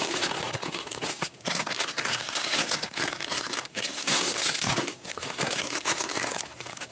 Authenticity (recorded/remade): remade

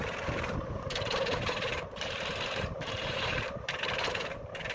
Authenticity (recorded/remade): remade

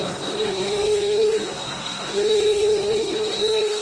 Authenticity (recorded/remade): remade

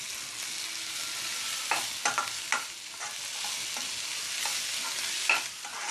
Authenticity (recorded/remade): recorded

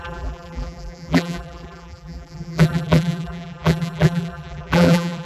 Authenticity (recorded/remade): remade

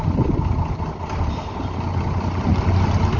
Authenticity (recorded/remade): recorded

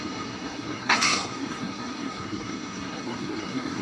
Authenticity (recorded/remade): remade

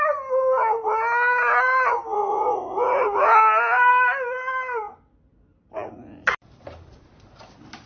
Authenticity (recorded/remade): recorded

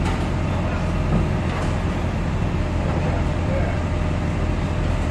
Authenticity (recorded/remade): recorded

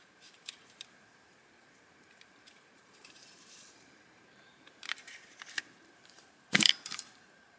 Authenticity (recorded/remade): remade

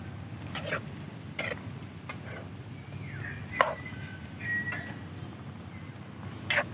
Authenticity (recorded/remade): recorded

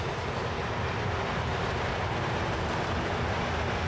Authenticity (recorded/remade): recorded